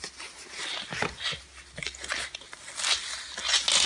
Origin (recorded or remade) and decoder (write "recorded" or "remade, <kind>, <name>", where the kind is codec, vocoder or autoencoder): recorded